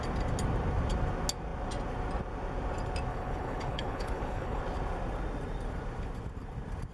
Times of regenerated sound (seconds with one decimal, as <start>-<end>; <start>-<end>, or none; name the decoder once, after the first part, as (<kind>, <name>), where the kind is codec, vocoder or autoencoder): 3.1-4.6 (codec, HILCodec)